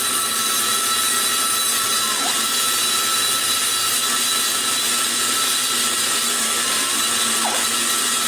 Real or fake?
real